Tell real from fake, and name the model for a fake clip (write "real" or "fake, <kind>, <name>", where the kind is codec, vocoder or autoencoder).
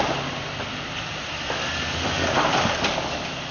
real